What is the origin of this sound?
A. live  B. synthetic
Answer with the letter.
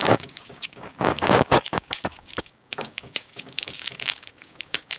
B